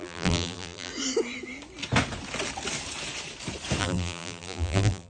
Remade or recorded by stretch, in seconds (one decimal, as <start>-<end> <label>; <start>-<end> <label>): 0.0-0.9 remade; 0.9-3.8 recorded; 3.8-5.1 remade